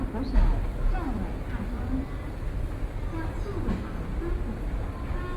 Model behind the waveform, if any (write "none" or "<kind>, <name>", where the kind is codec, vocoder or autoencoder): none